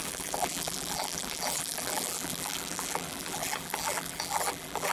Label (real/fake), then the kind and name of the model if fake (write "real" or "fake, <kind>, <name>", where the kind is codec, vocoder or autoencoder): fake, vocoder, BigVGAN v2